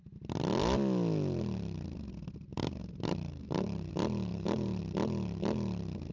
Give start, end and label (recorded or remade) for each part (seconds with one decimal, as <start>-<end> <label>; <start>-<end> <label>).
0.0-2.5 recorded; 2.5-3.9 remade; 3.9-4.3 recorded; 4.3-4.8 remade; 4.8-6.1 recorded